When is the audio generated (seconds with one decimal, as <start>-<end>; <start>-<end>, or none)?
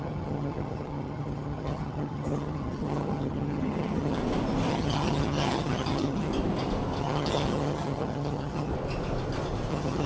0.0-4.2; 4.7-6.3; 7.0-8.7; 9.7-10.1